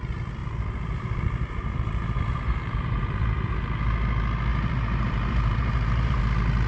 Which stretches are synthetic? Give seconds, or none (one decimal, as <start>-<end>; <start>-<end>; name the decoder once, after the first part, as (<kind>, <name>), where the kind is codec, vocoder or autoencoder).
0.4-3.5 (vocoder, BigVGAN v2); 4.5-6.2